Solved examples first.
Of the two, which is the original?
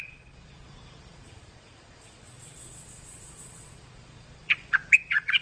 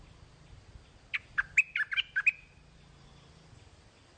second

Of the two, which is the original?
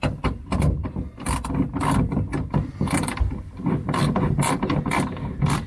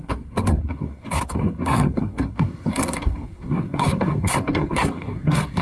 first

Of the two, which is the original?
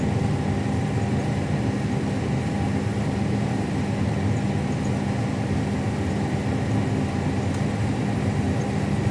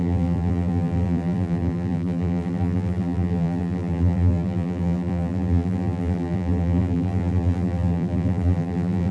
first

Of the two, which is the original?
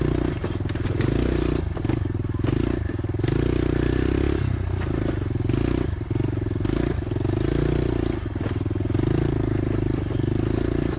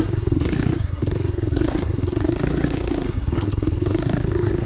first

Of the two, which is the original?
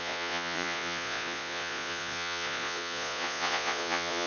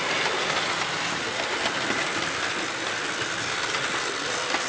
second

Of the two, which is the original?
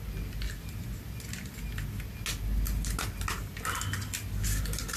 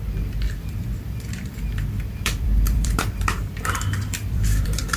first